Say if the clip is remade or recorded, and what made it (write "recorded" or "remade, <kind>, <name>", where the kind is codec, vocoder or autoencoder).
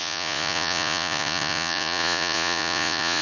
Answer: remade, vocoder, Vocos